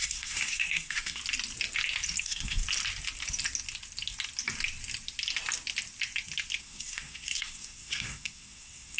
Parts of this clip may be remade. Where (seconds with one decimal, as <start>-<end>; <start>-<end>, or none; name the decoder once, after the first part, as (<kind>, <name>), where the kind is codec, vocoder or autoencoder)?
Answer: 0.0-1.2 (codec, SNAC); 2.2-2.6; 6.6-9.0